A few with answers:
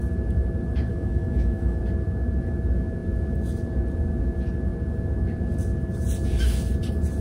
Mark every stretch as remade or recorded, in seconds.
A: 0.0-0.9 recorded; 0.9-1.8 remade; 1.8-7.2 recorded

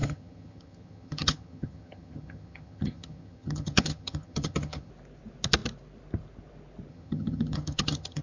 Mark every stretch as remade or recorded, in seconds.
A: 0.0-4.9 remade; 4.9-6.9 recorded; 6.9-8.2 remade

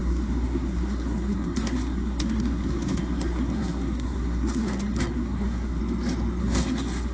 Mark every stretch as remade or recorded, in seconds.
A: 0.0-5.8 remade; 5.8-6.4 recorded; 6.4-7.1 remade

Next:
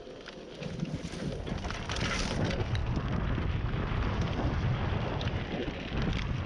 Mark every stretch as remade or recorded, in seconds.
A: 0.0-6.5 recorded

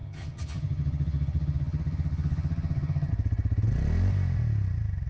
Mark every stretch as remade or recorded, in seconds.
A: 0.0-3.1 remade; 3.1-5.1 recorded

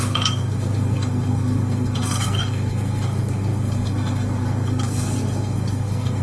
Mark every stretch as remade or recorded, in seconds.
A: 0.0-6.2 remade